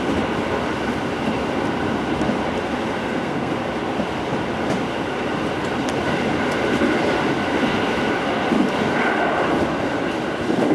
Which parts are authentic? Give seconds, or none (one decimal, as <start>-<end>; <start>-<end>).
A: 0.0-3.0; 3.5-10.7